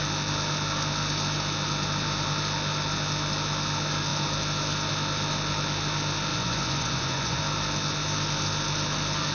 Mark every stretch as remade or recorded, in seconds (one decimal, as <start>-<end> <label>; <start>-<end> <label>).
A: 0.0-6.3 recorded; 6.3-7.4 remade; 7.4-9.3 recorded